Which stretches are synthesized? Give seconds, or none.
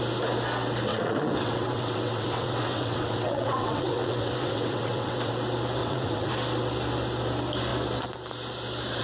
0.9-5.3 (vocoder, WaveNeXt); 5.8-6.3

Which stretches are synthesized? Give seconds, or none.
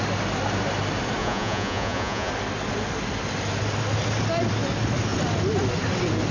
1.2-2.3 (vocoder, Vocos)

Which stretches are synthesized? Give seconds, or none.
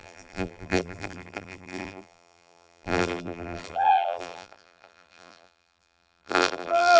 0.0-7.0 (vocoder, BigVGAN v2)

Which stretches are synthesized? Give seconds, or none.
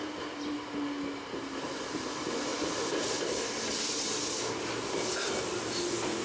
none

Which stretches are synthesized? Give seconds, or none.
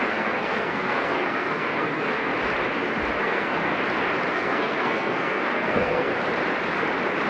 0.0-2.3 (codec, SNAC); 3.2-3.7; 4.3-6.1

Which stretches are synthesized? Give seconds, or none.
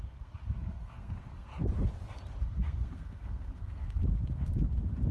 0.0-1.5 (codec, SNAC); 2.4-4.0